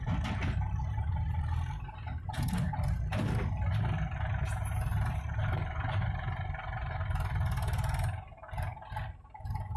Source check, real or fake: real